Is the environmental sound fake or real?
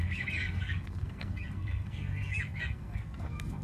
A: fake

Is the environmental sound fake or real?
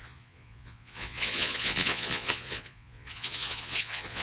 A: fake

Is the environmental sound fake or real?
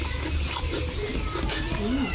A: real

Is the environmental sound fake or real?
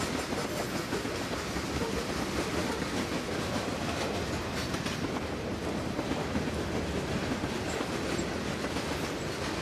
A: real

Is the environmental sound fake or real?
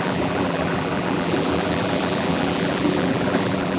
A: fake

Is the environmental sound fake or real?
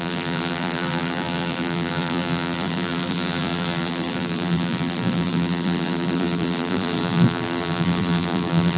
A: fake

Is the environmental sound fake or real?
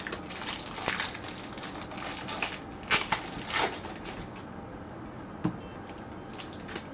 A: real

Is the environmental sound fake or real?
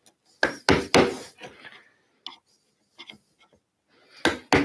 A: real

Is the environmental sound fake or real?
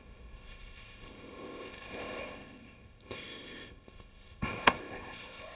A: fake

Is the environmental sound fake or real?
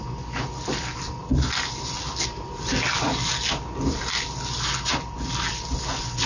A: real